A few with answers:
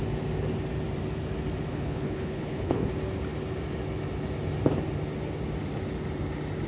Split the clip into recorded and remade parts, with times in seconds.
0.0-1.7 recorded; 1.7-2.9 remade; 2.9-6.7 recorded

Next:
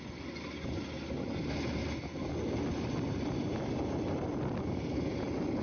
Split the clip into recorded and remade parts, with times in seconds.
0.0-5.6 recorded

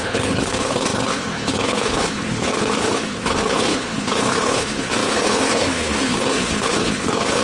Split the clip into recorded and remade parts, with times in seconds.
0.0-7.4 remade